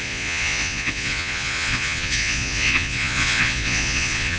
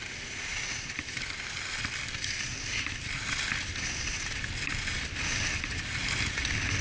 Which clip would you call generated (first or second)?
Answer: first